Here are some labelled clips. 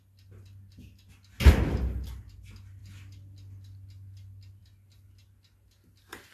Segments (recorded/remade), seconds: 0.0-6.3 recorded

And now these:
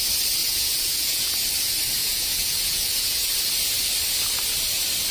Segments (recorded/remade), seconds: 0.0-0.4 recorded; 0.4-1.3 remade; 1.3-2.0 recorded; 2.0-3.3 remade; 3.3-5.1 recorded

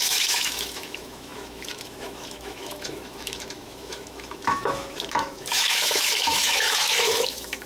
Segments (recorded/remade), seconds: 0.0-7.7 remade

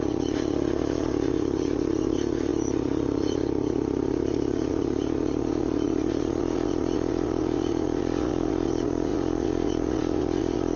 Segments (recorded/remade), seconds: 0.0-10.8 remade

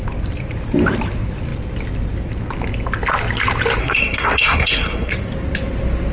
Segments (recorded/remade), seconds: 0.0-3.8 recorded; 3.8-5.1 remade; 5.1-6.1 recorded

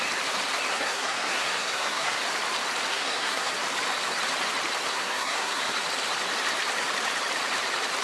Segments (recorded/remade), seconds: 0.0-0.7 recorded; 0.7-2.2 remade; 2.2-2.9 recorded; 2.9-3.5 remade; 3.5-4.9 recorded; 4.9-5.6 remade; 5.6-8.0 recorded

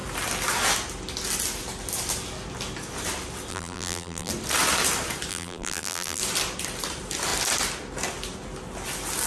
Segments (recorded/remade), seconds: 0.0-3.5 recorded; 3.5-4.3 remade; 4.3-5.3 recorded; 5.3-6.2 remade; 6.2-9.3 recorded